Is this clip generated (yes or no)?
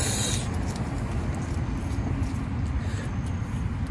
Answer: no